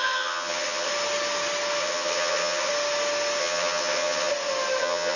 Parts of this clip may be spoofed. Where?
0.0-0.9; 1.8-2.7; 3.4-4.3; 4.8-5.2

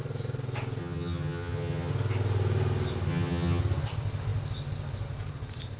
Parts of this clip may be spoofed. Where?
0.8-1.9; 3.1-3.6